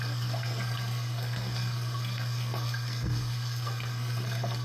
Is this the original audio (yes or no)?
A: no